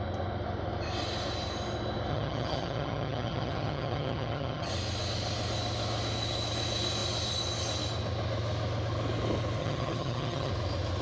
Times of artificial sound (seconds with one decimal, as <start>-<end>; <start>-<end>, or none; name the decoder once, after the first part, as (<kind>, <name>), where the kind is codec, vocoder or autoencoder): 2.1-4.7 (vocoder, HiFi-GAN); 9.6-10.5